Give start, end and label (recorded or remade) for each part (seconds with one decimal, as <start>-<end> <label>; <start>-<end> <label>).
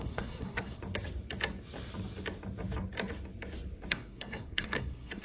0.0-0.8 remade; 0.8-3.9 recorded; 3.9-5.2 remade